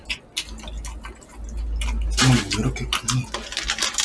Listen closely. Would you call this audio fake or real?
real